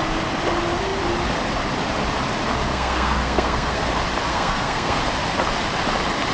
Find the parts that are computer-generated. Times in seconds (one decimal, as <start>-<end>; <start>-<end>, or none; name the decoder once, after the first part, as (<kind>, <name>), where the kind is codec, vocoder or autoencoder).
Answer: 2.7-3.9 (codec, SNAC); 4.3-5.0